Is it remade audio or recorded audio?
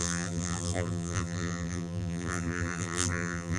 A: remade